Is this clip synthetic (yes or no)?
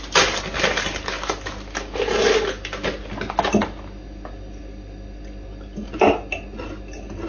no